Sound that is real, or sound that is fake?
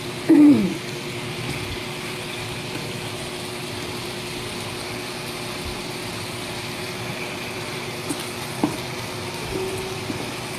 real